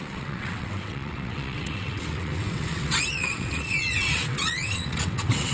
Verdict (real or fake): fake